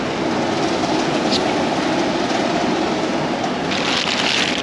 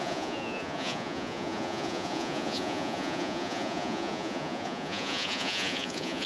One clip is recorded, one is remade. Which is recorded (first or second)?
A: first